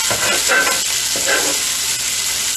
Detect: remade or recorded recorded